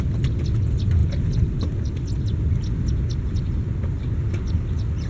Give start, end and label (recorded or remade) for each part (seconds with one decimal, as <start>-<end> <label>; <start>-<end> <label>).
0.0-5.1 recorded